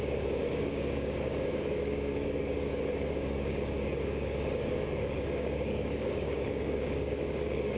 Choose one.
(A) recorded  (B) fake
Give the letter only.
B